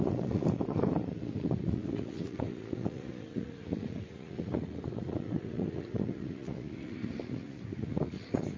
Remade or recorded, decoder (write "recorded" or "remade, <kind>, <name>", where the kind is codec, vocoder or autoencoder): remade, vocoder, Vocos